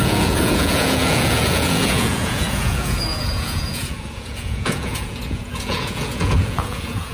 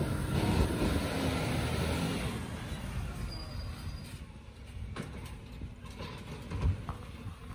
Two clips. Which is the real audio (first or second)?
second